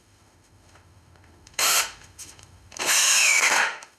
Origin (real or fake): fake